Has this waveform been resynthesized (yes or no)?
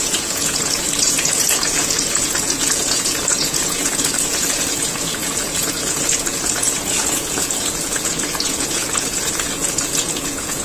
yes